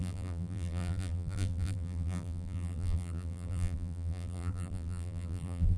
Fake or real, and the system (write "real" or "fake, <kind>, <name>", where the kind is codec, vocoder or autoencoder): fake, vocoder, BigVGAN v2